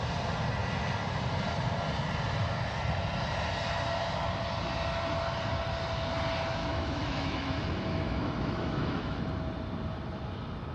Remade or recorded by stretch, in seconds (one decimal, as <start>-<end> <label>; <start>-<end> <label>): 0.0-6.6 recorded; 6.6-9.2 remade; 9.2-10.7 recorded

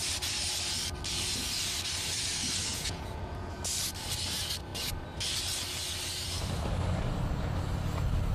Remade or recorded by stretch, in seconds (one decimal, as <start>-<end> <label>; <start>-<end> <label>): 0.0-2.7 recorded; 2.7-3.6 remade; 3.6-8.3 recorded